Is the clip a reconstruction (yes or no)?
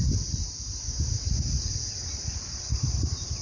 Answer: no